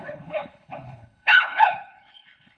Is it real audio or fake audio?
fake